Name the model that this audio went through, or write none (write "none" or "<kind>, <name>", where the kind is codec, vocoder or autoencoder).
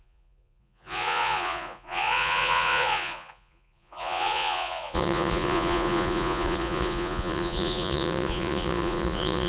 vocoder, Vocos